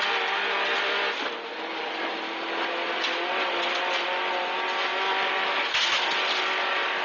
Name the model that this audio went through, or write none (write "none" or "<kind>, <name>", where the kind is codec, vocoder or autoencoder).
none